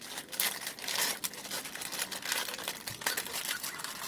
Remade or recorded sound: recorded